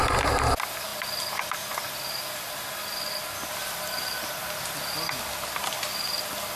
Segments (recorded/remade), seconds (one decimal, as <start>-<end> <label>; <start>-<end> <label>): 0.0-6.6 recorded